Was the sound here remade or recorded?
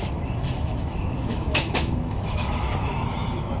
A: remade